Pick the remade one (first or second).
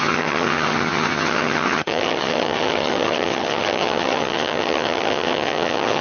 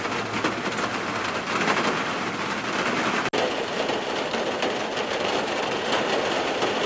first